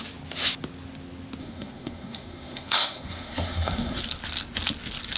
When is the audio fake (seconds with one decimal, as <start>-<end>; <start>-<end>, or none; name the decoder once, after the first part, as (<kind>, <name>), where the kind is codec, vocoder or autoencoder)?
1.4-4.0 (codec, SNAC)